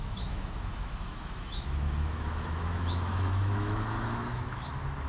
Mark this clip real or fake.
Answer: fake